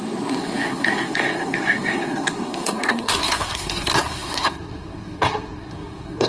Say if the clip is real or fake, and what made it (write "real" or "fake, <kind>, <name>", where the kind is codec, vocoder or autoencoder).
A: fake, codec, SNAC